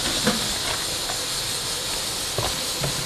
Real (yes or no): yes